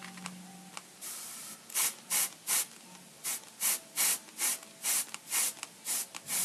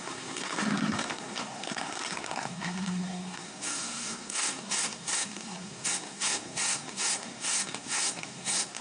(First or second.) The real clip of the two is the first